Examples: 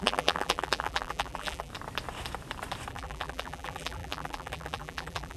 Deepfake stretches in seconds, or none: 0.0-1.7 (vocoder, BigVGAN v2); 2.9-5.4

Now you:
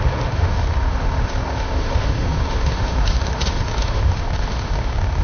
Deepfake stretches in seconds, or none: 0.0-5.2 (autoencoder, DAC-VAE)

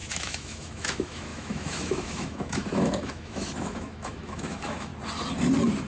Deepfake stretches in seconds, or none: 0.0-4.9 (autoencoder, DAC-VAE)

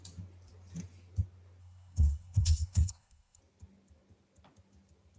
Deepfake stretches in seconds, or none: 1.6-3.4 (codec, SNAC)

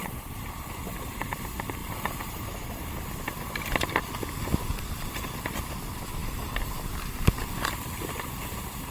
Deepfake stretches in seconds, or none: 1.8-2.3 (vocoder, BigVGAN v2)

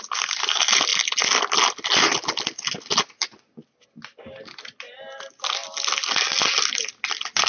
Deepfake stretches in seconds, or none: none

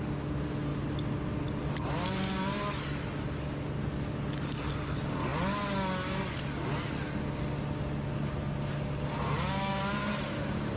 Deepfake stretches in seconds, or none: none